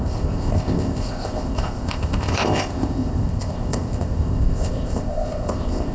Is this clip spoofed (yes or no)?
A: yes